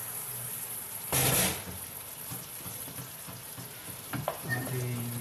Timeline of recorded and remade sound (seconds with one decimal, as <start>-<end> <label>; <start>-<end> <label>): 0.0-3.0 remade; 3.0-5.2 recorded